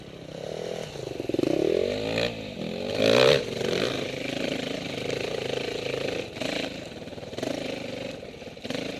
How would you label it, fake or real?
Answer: real